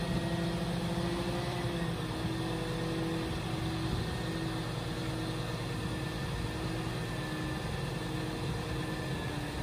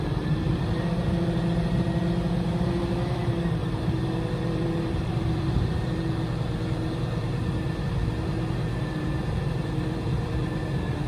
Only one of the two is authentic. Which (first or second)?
first